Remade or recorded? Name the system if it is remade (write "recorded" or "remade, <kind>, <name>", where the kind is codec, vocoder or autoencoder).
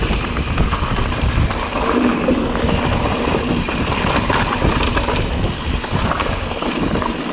recorded